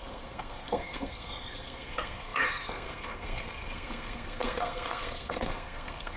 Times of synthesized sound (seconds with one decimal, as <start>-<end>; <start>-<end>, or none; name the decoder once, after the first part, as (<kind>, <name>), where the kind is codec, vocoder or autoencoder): 0.0-6.2 (codec, SNAC)